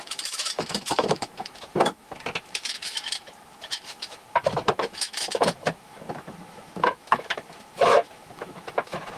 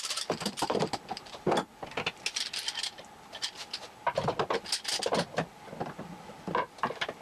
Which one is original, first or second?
second